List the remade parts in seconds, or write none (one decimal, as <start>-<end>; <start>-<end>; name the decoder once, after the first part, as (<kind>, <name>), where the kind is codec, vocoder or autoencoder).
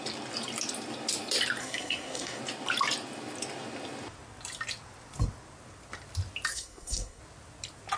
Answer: 1.6-2.4 (codec, SNAC); 6.5-7.2